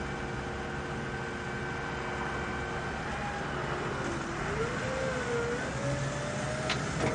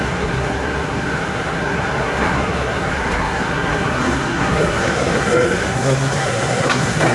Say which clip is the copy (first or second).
second